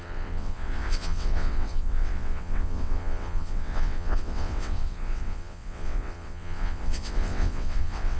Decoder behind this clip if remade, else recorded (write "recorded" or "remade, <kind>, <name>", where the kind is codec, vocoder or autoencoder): remade, vocoder, WaveNeXt